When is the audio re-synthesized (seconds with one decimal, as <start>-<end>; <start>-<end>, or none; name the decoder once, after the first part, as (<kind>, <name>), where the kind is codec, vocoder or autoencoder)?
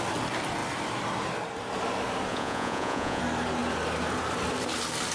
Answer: 2.3-3.2 (vocoder, Vocos)